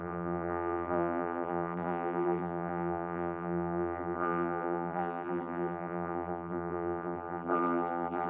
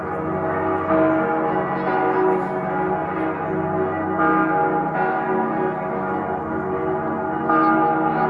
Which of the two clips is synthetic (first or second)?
first